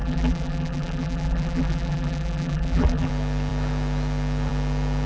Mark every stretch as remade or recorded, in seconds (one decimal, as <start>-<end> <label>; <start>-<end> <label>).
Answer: 0.0-3.1 remade; 3.1-5.1 recorded